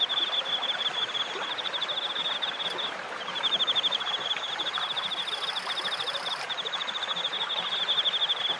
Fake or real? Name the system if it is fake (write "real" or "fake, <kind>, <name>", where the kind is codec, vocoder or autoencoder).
real